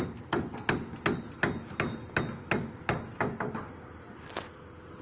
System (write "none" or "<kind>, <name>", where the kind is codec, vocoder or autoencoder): none